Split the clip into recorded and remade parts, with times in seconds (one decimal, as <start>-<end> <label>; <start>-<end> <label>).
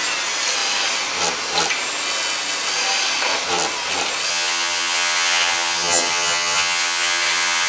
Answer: 0.0-4.3 recorded; 4.3-7.7 remade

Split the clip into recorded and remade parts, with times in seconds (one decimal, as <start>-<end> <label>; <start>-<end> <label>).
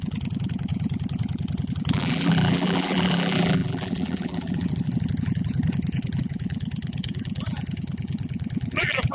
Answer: 0.0-9.1 remade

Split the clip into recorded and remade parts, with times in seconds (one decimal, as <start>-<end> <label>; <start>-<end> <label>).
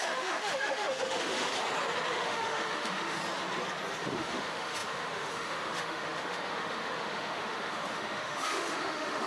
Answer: 0.0-1.5 remade; 1.5-2.1 recorded; 2.1-3.2 remade; 3.2-4.0 recorded; 4.0-9.3 remade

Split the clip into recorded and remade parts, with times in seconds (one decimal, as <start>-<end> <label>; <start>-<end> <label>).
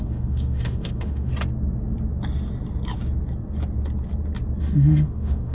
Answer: 0.0-1.3 remade; 1.3-4.6 recorded; 4.6-5.5 remade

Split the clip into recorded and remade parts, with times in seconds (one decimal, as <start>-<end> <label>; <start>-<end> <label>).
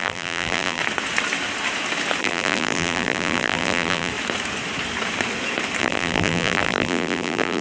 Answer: 0.0-0.8 remade; 0.8-2.2 recorded; 2.2-4.1 remade; 4.1-5.8 recorded; 5.8-7.6 remade